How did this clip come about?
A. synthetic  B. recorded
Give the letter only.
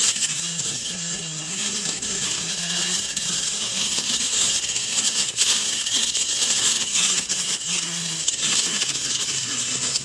A